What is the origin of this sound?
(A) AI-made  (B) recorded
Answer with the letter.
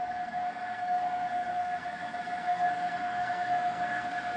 A